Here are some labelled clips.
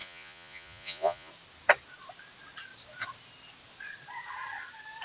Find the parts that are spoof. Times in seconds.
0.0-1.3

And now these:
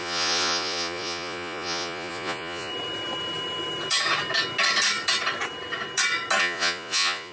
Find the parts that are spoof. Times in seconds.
0.0-2.7; 6.4-7.3

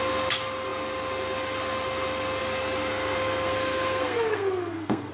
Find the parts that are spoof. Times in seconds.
2.9-5.1

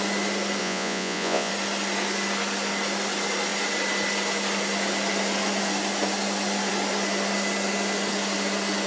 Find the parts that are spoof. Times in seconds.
0.6-1.5

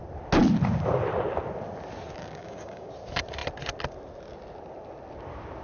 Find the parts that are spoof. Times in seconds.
2.2-2.9

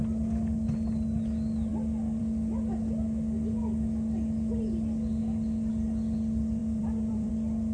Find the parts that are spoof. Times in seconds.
6.6-7.3